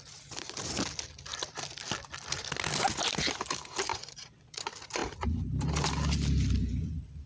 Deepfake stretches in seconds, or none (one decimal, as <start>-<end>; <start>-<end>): 3.9-4.6